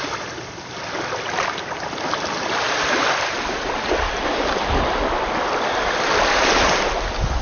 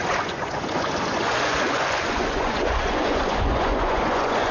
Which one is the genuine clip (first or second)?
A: first